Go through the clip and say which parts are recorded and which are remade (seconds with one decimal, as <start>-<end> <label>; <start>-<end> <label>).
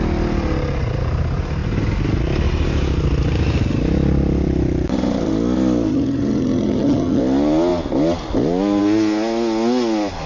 0.0-5.9 recorded; 5.9-7.2 remade; 7.2-10.3 recorded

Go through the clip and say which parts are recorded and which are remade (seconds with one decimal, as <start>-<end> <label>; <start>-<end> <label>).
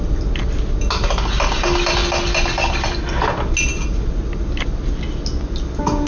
0.0-6.1 recorded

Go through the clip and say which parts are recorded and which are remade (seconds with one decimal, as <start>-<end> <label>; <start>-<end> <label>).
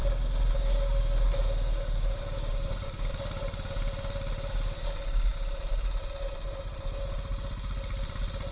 0.0-3.1 remade; 3.1-8.5 recorded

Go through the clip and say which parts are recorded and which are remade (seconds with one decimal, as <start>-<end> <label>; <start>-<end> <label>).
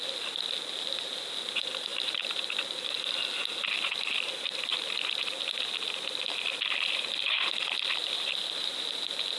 0.0-9.4 recorded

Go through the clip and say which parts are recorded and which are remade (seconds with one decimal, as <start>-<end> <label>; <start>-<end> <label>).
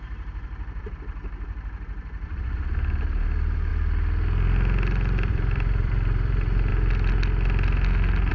0.0-3.7 remade; 3.7-5.3 recorded; 5.3-6.7 remade; 6.7-8.3 recorded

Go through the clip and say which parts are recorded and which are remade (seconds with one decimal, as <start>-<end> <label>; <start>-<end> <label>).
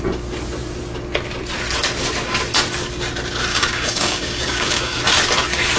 0.0-3.5 recorded; 3.5-5.0 remade; 5.0-5.8 recorded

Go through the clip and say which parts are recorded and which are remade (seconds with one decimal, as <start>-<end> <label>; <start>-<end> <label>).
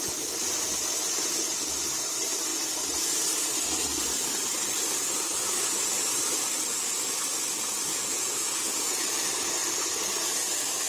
0.0-7.9 recorded; 7.9-9.0 remade; 9.0-10.9 recorded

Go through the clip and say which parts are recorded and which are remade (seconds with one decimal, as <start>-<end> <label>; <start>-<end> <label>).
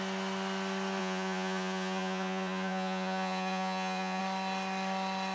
0.0-1.0 recorded; 1.0-4.2 remade; 4.2-5.3 recorded